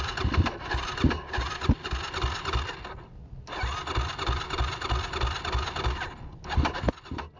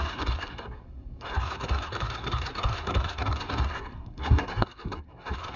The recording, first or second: first